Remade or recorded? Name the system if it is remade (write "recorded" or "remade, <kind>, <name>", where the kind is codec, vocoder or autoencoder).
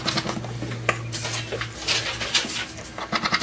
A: recorded